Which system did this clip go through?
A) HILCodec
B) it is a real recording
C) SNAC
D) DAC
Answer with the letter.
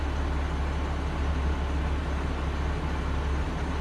B